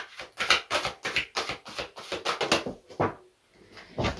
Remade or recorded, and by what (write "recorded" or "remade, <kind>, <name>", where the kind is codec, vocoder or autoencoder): recorded